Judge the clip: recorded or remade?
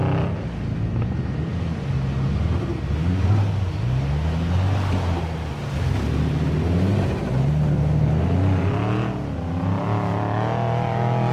recorded